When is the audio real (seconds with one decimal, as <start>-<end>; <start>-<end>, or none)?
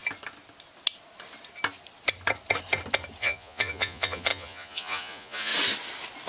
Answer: 0.0-3.2; 5.5-6.3